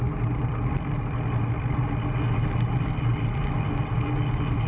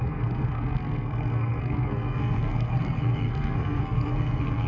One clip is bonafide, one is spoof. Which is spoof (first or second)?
second